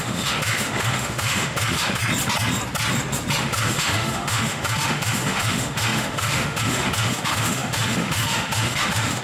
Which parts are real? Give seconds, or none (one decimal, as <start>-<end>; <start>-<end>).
2.0-3.4